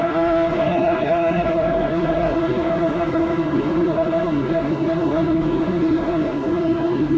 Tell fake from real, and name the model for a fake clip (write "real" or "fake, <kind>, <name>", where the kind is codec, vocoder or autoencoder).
fake, codec, SNAC